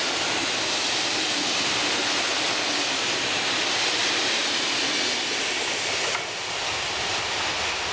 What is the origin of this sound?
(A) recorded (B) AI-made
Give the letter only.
A